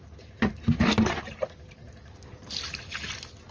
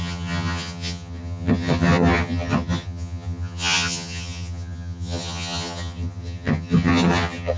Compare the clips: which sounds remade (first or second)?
second